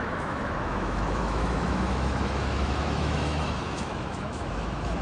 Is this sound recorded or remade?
remade